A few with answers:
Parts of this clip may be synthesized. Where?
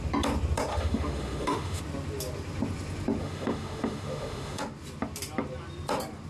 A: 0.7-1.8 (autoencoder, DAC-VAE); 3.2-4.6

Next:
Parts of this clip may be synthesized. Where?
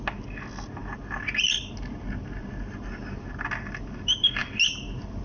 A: none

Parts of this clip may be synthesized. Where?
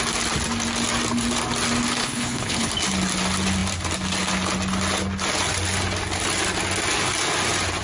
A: 2.0-2.7 (codec, HILCodec)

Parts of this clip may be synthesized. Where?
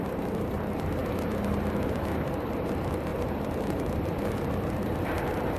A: 0.0-5.6 (vocoder, BigVGAN v2)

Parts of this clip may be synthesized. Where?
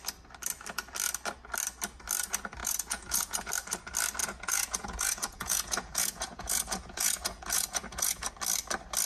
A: 2.6-3.5 (vocoder, Vocos); 4.2-8.3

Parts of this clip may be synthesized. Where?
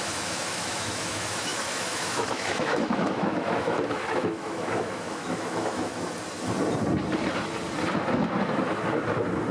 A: 0.0-5.9 (autoencoder, DAC-VAE)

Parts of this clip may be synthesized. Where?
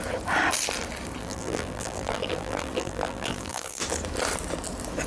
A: 1.2-3.8 (vocoder, BigVGAN v2)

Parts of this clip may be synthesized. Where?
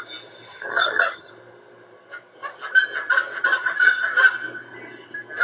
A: 0.5-1.3 (vocoder, HiFi-GAN); 3.5-4.1